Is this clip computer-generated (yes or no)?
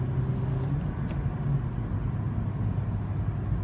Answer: no